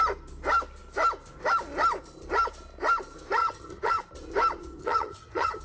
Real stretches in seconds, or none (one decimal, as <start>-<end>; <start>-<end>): 0.0-3.4; 4.0-4.8